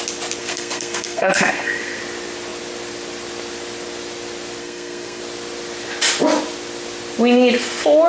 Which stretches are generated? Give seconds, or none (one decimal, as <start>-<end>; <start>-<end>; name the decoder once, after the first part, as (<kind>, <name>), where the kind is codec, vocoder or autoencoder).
0.4-2.0 (codec, SNAC); 4.6-5.2